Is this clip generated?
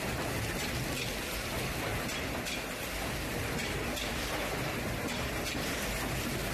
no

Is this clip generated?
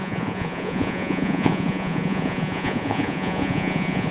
yes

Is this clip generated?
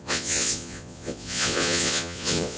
yes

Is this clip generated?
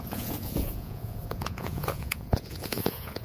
yes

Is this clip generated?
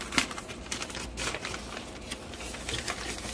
no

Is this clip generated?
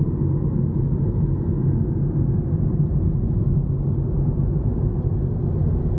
no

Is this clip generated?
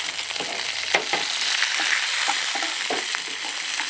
no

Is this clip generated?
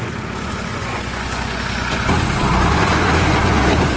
yes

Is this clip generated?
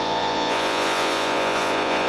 yes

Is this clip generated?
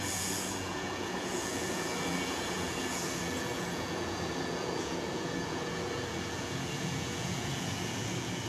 yes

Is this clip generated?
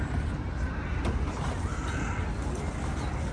no